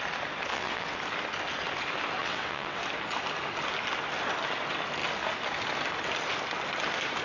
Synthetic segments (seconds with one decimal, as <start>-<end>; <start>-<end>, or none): 0.5-1.0; 2.2-2.8